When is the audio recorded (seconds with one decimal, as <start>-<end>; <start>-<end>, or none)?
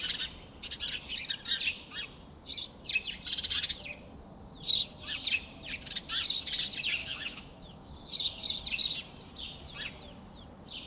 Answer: 0.0-7.0; 7.9-10.9